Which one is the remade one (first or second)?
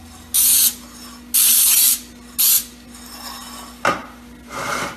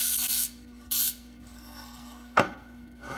second